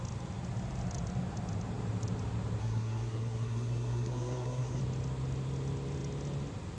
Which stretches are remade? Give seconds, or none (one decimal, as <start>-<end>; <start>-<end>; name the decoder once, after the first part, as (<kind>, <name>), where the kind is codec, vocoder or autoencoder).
2.6-4.8 (codec, SNAC)